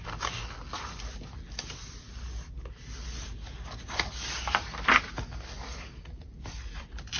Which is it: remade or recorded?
recorded